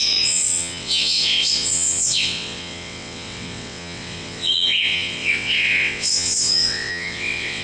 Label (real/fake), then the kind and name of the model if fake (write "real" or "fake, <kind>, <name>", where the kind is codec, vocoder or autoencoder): fake, vocoder, WaveNeXt